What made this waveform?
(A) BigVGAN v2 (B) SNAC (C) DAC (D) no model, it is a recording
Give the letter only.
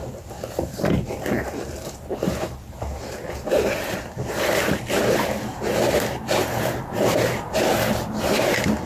A